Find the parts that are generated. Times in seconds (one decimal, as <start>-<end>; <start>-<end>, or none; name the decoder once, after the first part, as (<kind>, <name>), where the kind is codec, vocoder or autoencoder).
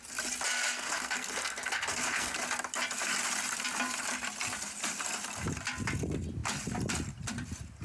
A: 0.6-2.4 (codec, SNAC)